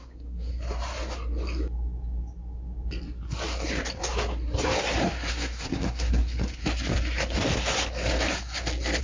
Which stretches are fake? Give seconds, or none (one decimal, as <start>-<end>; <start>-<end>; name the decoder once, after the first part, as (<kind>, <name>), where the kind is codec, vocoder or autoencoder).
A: 0.0-0.5 (codec, SNAC); 5.3-6.6